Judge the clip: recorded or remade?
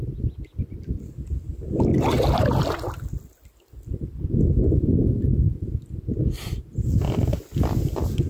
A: recorded